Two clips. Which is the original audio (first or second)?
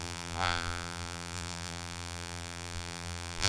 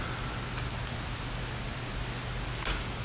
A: second